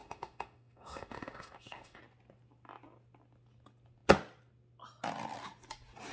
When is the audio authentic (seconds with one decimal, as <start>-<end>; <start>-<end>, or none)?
2.0-6.1